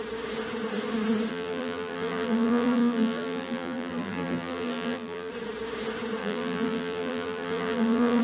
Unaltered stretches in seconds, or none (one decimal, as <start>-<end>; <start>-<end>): 0.0-1.3; 5.3-6.2